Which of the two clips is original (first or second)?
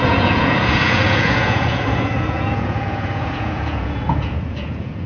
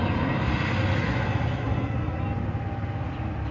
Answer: second